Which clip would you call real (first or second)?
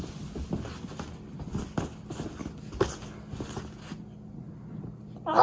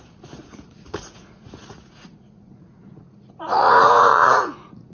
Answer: first